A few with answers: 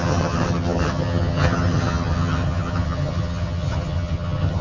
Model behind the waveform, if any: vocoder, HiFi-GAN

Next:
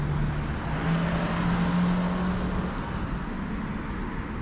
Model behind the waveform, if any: none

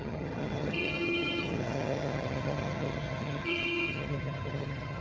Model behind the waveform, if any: vocoder, HiFi-GAN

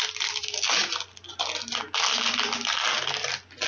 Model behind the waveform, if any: none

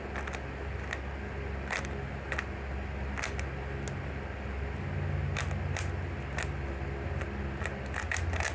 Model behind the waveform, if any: none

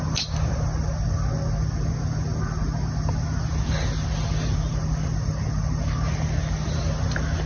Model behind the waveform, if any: none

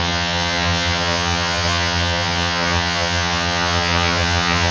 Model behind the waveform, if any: vocoder, HiFi-GAN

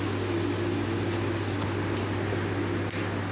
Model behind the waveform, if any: none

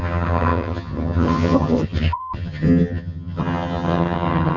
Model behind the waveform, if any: vocoder, HiFi-GAN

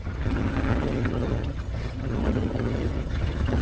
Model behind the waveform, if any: vocoder, HiFi-GAN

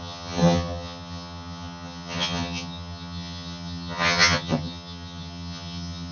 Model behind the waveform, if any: vocoder, HiFi-GAN